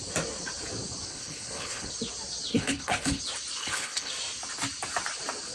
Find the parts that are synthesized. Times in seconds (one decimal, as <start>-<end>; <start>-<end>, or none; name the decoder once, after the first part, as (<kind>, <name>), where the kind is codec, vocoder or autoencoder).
1.1-1.9 (codec, HILCodec); 2.5-3.2; 3.6-4.1